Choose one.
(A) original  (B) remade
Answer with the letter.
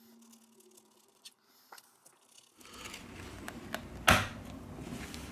A